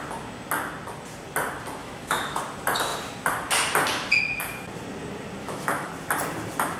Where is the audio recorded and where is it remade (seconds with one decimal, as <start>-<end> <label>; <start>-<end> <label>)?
0.0-1.8 recorded; 1.8-2.4 remade; 2.4-5.4 recorded; 5.4-5.9 remade; 5.9-6.8 recorded